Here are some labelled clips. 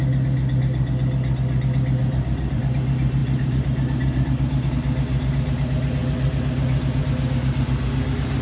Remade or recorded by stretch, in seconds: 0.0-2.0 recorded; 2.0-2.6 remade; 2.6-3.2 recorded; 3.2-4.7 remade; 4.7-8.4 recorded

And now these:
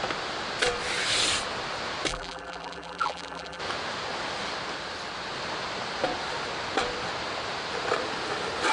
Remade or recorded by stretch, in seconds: 0.0-2.1 recorded; 2.1-3.6 remade; 3.6-8.7 recorded

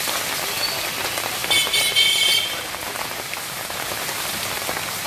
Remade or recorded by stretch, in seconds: 0.0-1.4 recorded; 1.4-4.5 remade; 4.5-5.1 recorded

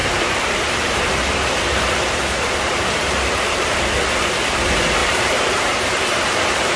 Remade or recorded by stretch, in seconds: 0.0-4.1 remade; 4.1-5.0 recorded; 5.0-6.8 remade

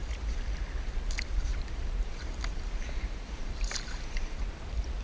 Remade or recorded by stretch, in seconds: 0.0-1.5 recorded; 1.5-4.5 remade; 4.5-5.0 recorded